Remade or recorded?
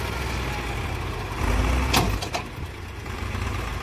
recorded